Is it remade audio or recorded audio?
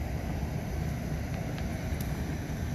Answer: recorded